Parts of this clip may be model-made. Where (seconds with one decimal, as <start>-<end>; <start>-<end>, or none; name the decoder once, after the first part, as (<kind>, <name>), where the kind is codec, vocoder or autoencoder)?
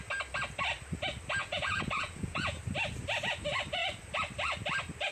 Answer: 1.4-2.6 (vocoder, Vocos)